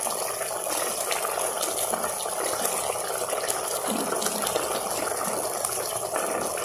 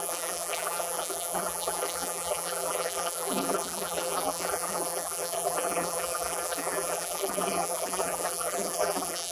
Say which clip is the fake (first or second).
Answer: second